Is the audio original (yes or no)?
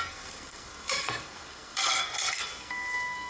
no